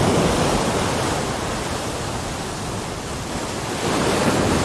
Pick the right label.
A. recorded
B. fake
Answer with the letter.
A